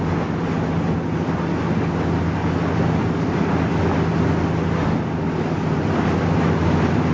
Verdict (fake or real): real